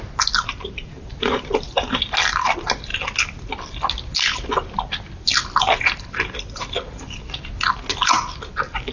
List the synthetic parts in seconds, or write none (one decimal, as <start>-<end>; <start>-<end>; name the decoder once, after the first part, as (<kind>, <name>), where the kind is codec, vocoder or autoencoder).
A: 0.5-2.0 (vocoder, BigVGAN v2)